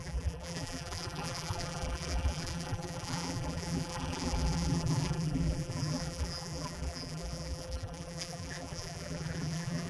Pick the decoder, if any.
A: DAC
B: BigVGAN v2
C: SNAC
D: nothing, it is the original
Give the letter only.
B